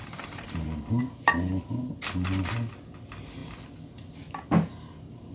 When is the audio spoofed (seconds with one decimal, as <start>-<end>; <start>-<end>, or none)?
0.0-1.0